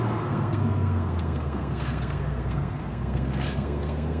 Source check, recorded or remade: remade